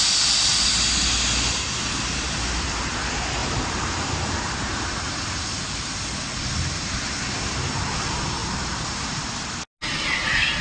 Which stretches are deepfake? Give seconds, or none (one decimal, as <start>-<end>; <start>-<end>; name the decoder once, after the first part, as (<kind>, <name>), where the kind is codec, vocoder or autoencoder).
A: 3.4-4.8 (vocoder, BigVGAN v2); 8.4-9.3